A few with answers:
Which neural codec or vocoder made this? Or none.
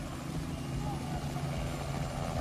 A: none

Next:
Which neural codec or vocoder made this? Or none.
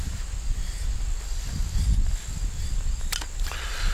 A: none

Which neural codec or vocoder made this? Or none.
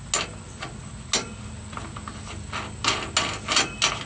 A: none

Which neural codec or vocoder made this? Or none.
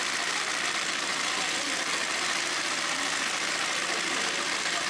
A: vocoder, BigVGAN v2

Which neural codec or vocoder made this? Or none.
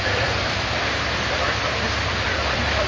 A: vocoder, BigVGAN v2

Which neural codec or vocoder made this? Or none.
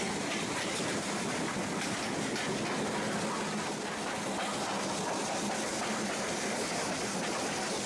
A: none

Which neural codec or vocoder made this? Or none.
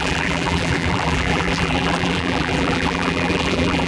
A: vocoder, BigVGAN v2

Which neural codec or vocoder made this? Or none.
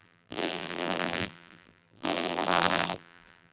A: vocoder, BigVGAN v2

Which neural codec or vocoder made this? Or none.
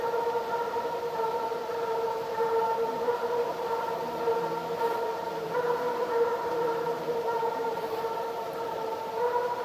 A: vocoder, BigVGAN v2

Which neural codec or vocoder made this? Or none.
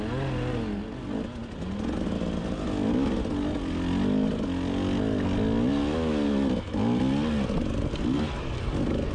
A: none